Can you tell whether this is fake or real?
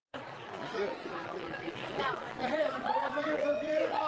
fake